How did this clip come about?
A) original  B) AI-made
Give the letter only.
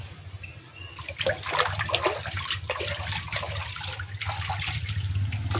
A